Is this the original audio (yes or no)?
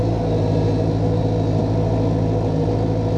yes